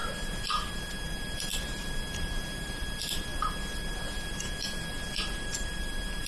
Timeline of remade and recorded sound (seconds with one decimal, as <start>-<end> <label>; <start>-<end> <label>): 0.0-6.3 remade